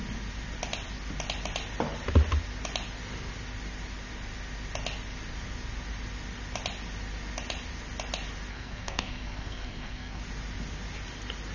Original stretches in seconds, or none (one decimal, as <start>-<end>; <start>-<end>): 0.0-8.5; 10.2-11.5

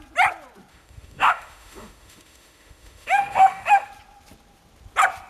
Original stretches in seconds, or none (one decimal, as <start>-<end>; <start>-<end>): 0.0-0.7; 3.9-5.3

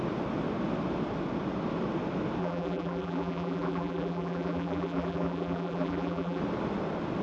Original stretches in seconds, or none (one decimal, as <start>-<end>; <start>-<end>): 0.0-2.4; 6.4-7.2

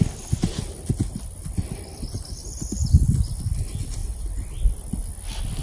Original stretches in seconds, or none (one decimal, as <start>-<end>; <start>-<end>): 0.0-5.6